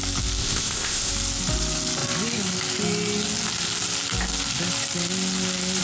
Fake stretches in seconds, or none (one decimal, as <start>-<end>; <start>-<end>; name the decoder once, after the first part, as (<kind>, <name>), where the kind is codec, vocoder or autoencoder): 0.4-1.1 (codec, ZipCodec)